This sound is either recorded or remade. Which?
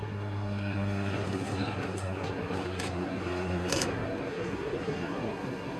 remade